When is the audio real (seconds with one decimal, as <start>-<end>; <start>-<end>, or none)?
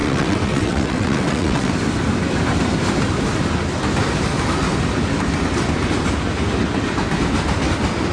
1.7-8.1